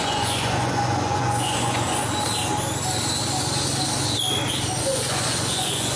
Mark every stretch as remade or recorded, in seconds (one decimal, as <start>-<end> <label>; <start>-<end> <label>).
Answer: 0.0-2.0 remade; 2.0-4.8 recorded; 4.8-6.0 remade